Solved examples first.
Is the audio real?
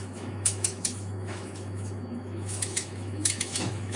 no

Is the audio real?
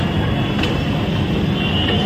yes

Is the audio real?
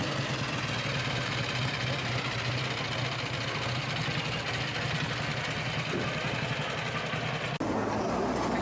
yes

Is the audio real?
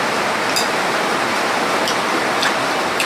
no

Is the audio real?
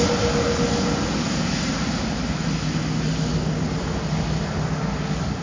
yes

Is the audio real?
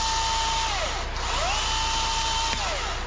yes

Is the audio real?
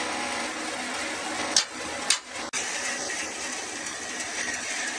yes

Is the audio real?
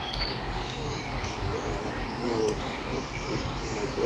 no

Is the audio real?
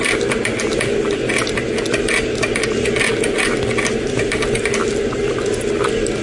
yes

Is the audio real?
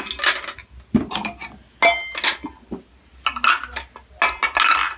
yes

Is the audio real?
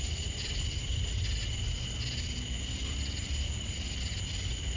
yes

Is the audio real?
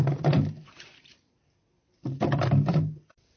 no